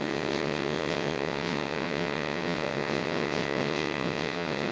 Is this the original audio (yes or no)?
no